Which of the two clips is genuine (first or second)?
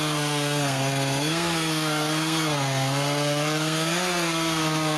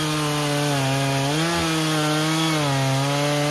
second